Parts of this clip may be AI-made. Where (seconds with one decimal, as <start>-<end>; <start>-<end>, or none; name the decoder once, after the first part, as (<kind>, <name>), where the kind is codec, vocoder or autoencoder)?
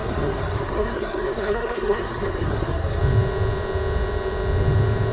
0.0-3.0 (codec, SNAC)